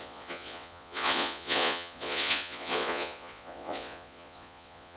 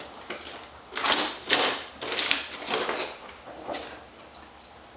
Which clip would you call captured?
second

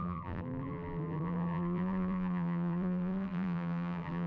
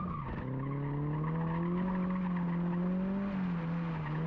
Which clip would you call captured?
second